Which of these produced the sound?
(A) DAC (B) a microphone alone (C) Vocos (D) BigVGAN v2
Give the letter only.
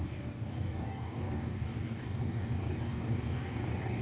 A